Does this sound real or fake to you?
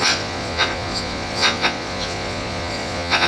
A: fake